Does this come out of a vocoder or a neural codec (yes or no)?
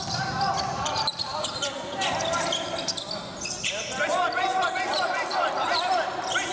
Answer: yes